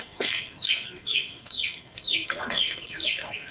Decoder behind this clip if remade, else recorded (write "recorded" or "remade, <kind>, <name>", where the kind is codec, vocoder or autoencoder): remade, codec, SNAC